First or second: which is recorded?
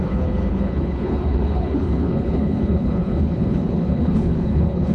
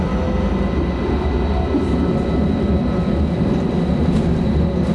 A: second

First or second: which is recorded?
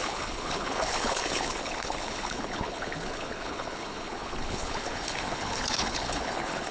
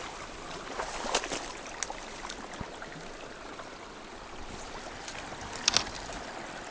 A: second